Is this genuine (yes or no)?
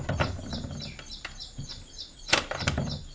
yes